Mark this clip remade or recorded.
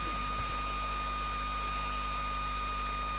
recorded